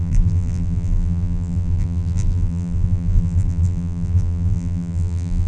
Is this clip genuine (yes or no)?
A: no